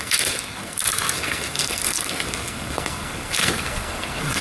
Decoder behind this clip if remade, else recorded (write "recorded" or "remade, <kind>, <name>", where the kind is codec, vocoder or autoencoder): remade, codec, SNAC